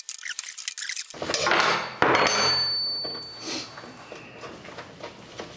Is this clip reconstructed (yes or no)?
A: no